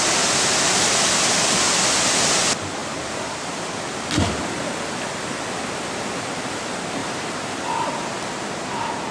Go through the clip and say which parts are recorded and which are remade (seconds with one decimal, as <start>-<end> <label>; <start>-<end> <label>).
0.0-2.8 recorded; 2.8-3.8 remade; 3.8-7.0 recorded; 7.0-8.7 remade; 8.7-9.1 recorded